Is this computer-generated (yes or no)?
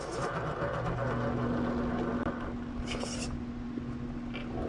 no